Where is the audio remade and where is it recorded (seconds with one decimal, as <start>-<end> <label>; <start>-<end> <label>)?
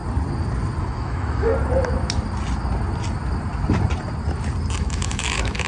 0.0-0.8 recorded; 0.8-1.5 remade; 1.5-4.8 recorded; 4.8-5.7 remade